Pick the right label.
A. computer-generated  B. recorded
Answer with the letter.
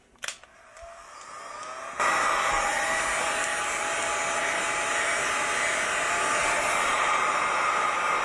B